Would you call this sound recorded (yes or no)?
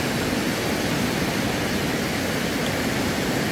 yes